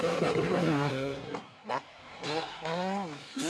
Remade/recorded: remade